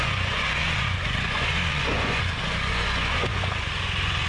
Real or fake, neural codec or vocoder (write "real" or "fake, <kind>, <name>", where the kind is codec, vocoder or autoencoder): fake, vocoder, Vocos